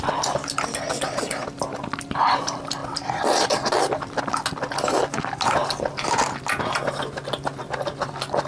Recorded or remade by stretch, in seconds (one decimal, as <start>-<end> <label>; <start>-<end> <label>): 0.0-2.8 recorded; 2.8-4.2 remade; 4.2-8.5 recorded